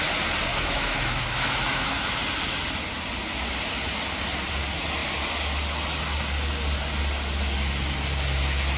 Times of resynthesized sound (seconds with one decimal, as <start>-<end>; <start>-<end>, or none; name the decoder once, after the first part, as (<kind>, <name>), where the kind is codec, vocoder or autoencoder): 0.5-2.1 (autoencoder, DAC-VAE)